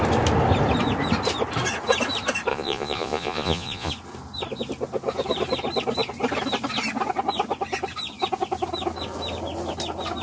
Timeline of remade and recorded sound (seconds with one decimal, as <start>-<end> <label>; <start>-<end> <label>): 0.0-2.5 recorded; 2.5-3.9 remade; 3.9-10.2 recorded